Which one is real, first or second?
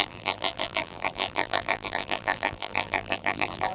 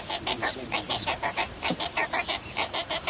second